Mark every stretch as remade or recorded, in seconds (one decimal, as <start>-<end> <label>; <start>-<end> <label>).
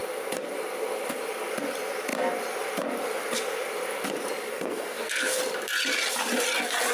0.0-4.5 recorded; 4.5-5.4 remade; 5.4-6.9 recorded